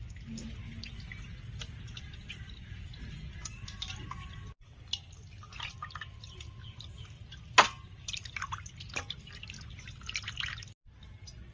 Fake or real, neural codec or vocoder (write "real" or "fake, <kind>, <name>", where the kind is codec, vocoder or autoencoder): real